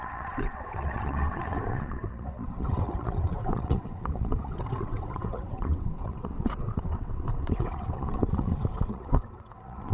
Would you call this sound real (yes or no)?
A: no